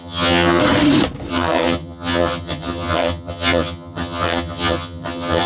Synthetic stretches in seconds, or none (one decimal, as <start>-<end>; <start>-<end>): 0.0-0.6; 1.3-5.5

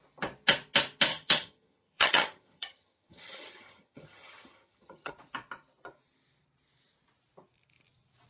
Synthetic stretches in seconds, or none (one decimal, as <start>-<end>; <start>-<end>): 1.1-5.1

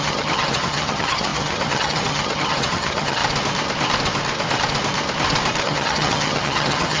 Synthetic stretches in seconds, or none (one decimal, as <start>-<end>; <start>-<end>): 0.0-3.2; 5.6-7.0